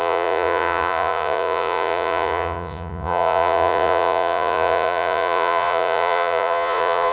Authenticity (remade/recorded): remade